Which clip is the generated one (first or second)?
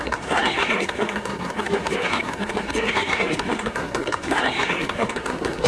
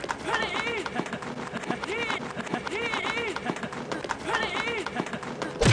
first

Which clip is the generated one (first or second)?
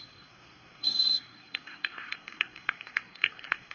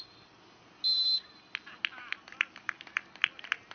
first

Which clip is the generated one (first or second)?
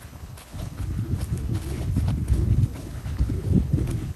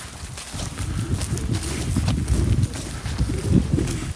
first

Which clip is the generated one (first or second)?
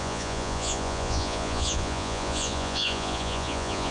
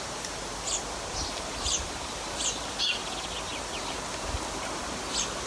first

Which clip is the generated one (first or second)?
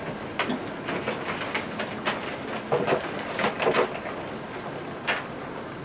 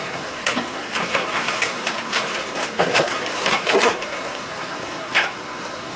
second